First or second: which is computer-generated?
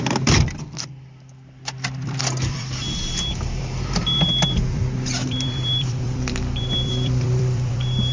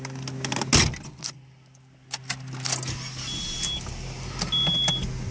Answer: first